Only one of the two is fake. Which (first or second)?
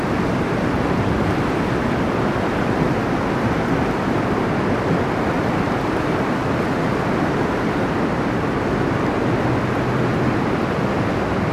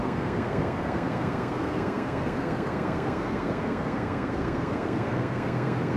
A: second